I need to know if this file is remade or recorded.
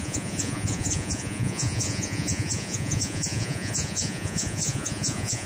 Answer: remade